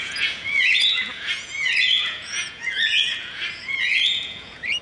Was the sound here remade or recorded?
remade